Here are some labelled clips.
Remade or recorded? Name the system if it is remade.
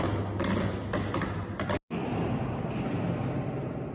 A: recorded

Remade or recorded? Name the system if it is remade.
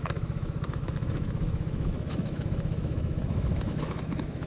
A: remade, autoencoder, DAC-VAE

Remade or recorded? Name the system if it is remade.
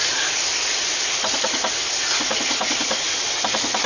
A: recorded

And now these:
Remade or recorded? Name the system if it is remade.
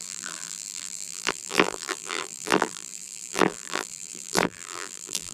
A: remade, vocoder, BigVGAN v2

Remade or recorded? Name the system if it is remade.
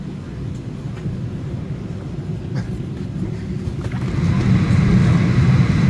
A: recorded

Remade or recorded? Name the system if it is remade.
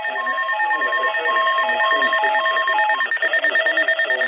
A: recorded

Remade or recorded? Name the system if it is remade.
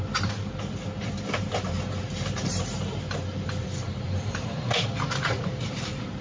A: remade, vocoder, BigVGAN v2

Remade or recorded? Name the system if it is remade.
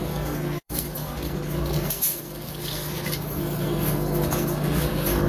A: remade, codec, SNAC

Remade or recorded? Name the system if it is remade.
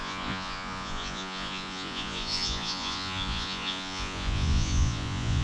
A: remade, vocoder, Vocos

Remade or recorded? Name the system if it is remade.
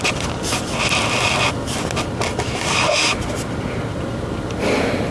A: recorded